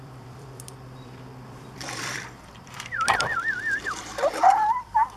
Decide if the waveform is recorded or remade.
remade